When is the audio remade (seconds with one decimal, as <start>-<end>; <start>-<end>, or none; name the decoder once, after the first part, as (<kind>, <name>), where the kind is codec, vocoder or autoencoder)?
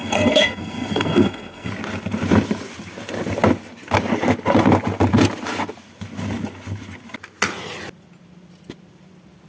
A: 0.0-1.7 (codec, SNAC)